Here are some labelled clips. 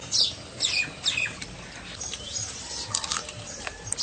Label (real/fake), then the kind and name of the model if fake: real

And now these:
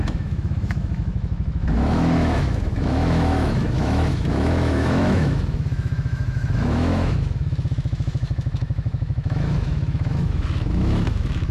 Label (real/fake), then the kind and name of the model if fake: fake, autoencoder, DAC-VAE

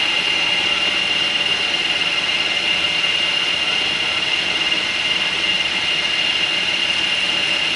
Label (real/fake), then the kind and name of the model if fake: real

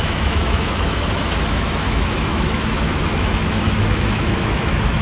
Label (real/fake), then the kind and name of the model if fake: fake, autoencoder, DAC-VAE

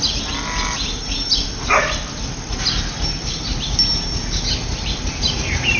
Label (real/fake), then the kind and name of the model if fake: real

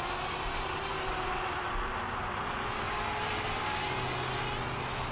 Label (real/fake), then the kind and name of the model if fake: real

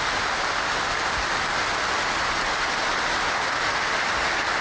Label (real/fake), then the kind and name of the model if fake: real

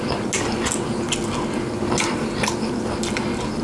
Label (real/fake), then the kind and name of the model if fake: real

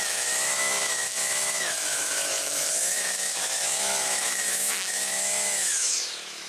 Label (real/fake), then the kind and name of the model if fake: fake, autoencoder, DAC-VAE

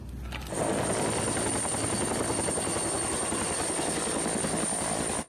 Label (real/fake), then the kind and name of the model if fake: real